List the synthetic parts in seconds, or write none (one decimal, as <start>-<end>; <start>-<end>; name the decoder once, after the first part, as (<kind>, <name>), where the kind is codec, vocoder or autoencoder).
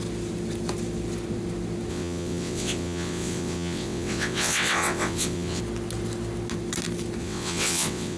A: 1.9-5.6 (vocoder, WaveNeXt); 7.2-8.2